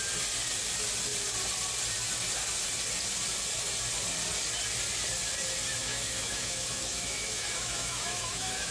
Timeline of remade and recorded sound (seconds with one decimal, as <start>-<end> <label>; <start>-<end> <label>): 0.0-5.9 recorded; 5.9-8.7 remade